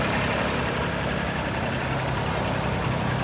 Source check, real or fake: real